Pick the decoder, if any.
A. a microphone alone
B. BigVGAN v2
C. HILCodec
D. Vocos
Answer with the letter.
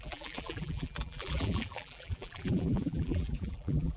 B